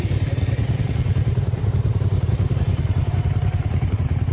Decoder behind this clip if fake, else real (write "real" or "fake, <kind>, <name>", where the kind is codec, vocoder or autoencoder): fake, vocoder, BigVGAN v2